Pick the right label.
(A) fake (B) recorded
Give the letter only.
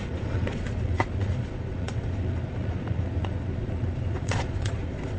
A